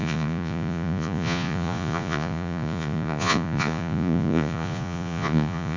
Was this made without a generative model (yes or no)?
no